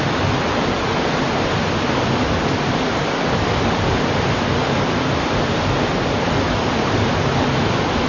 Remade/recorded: recorded